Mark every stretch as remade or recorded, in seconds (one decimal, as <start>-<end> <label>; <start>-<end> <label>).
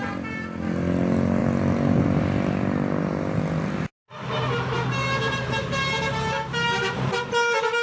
0.0-7.8 recorded